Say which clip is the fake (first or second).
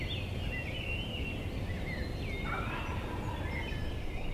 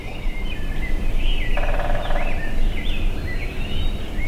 second